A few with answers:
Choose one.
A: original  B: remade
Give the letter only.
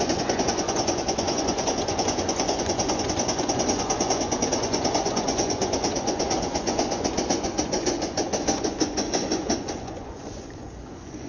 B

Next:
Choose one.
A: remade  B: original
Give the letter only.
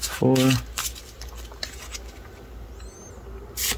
B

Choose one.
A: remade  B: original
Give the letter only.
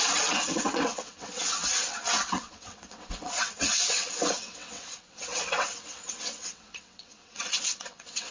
A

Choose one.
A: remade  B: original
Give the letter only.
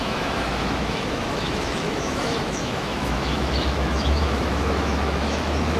A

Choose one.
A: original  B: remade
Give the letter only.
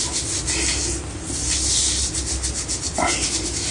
A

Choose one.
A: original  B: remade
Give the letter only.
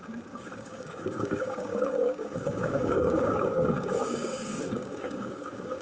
B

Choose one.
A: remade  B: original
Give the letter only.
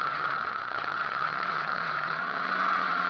A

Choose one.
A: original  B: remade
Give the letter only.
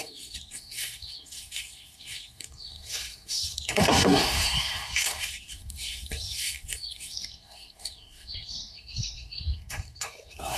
B